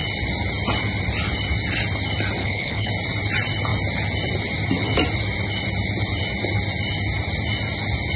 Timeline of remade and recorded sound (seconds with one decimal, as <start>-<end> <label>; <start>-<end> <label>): 0.0-2.4 recorded; 2.4-2.9 remade; 2.9-8.2 recorded